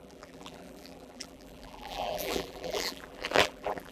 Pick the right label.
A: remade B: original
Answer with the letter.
A